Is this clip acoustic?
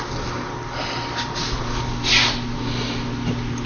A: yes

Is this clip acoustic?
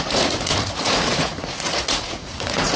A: no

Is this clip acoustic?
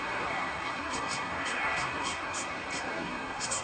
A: no